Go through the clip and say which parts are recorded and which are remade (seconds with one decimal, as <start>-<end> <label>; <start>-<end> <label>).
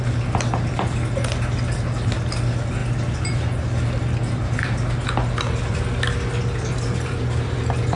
0.0-8.0 recorded